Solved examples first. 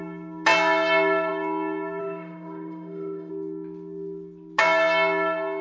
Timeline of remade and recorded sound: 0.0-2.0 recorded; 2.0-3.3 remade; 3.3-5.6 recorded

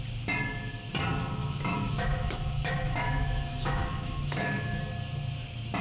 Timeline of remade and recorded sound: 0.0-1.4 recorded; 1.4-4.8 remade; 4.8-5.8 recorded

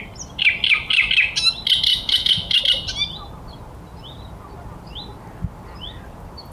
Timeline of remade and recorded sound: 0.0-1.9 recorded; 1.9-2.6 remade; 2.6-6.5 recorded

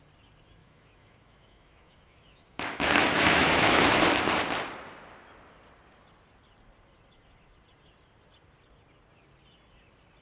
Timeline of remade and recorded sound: 0.0-0.6 recorded; 0.6-4.0 remade; 4.0-10.2 recorded

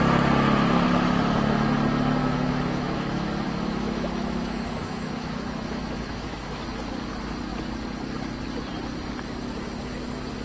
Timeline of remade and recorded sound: 0.0-2.2 recorded; 2.2-6.6 remade; 6.6-10.4 recorded

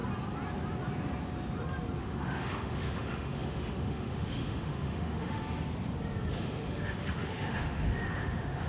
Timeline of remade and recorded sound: 0.0-2.0 recorded; 2.0-5.4 remade; 5.4-6.3 recorded; 6.3-8.7 remade

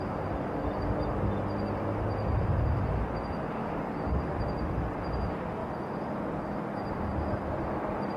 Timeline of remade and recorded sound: 0.0-8.2 recorded

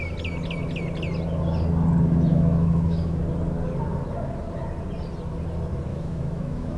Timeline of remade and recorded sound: 0.0-2.3 recorded; 2.3-3.2 remade; 3.2-5.9 recorded; 5.9-6.8 remade